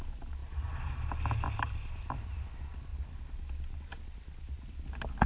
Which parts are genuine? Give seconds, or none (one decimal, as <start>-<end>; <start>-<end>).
0.0-5.3